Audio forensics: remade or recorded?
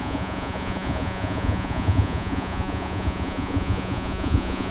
remade